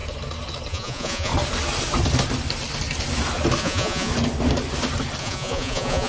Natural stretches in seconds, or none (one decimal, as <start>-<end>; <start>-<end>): 0.0-0.7; 1.3-3.6; 4.1-5.2